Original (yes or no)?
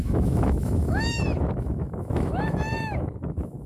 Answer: no